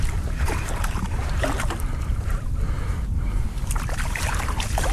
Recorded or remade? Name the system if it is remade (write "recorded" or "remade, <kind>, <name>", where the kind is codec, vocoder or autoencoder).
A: remade, vocoder, BigVGAN v2